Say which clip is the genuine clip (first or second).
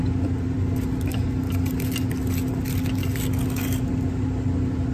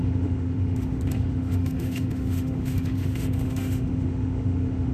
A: first